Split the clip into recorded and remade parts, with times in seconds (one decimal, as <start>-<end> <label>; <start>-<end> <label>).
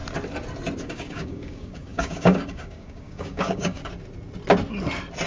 0.0-0.8 recorded; 0.8-3.8 remade; 3.8-5.3 recorded